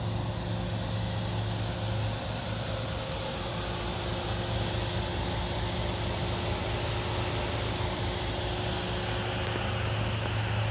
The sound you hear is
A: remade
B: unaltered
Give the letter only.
B